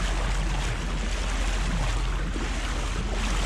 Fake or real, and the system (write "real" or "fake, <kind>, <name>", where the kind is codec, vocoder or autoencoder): real